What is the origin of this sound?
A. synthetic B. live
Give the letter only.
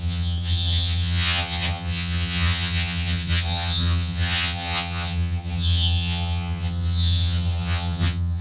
A